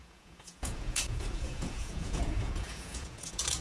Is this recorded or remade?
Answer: remade